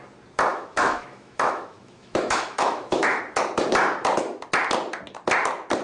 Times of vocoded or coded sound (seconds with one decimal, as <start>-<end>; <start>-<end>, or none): 0.5-3.2